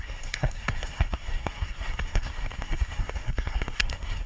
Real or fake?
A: fake